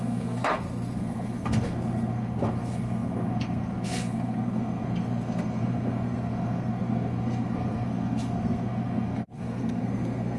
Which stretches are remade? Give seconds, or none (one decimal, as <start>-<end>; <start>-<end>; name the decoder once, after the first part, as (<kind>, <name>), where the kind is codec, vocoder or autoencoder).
0.0-10.4 (codec, SNAC)